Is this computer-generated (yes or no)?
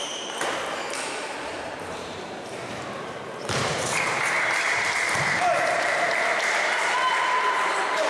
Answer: yes